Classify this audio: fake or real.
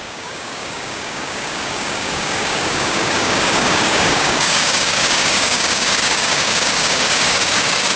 fake